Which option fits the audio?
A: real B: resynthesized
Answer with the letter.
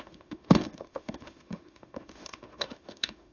B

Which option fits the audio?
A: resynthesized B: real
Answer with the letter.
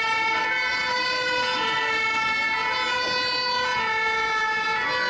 B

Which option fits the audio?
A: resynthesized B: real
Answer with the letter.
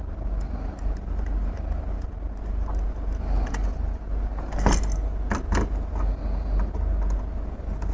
B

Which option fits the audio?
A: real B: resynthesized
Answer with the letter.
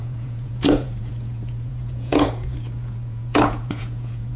B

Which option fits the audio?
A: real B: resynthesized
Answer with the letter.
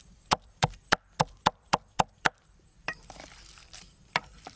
B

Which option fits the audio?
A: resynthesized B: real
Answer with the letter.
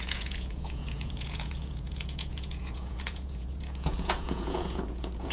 A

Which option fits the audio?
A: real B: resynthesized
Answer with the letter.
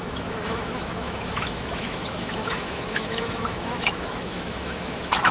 B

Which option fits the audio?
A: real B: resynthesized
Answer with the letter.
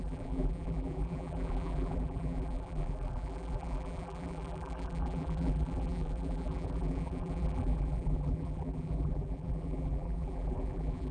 B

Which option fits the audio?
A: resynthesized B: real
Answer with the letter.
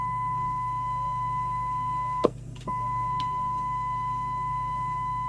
A